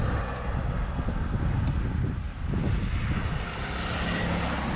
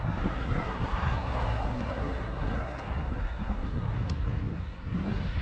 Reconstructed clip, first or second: second